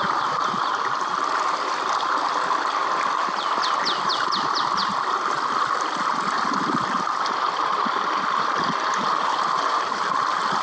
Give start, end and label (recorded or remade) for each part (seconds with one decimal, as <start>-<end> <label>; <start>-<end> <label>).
0.0-10.6 recorded